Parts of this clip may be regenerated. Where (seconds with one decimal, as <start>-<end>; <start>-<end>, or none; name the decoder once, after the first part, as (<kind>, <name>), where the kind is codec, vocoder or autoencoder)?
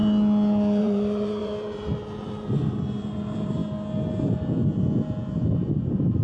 0.8-3.6 (vocoder, BigVGAN v2)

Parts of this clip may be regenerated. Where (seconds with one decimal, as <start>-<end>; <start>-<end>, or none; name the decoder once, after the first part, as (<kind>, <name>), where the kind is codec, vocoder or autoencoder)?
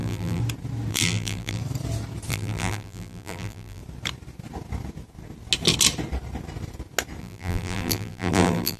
0.0-0.4 (vocoder, BigVGAN v2); 0.9-1.6; 2.3-3.8; 7.2-8.8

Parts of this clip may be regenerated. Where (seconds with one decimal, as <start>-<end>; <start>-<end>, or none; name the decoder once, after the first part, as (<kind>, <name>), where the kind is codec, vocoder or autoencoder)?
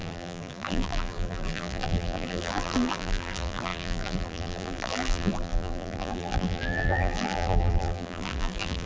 0.0-8.9 (vocoder, BigVGAN v2)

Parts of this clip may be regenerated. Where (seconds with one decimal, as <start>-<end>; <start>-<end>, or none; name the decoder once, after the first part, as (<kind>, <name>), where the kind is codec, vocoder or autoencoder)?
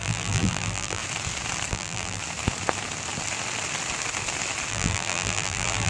0.0-1.0 (vocoder, BigVGAN v2); 1.7-2.2; 4.7-5.9